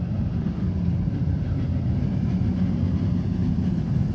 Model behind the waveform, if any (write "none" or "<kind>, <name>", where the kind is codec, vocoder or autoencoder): none